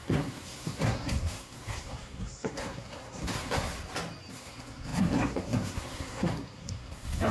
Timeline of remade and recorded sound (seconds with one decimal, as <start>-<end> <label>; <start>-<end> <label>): 0.0-3.7 remade; 3.7-4.3 recorded; 4.3-7.3 remade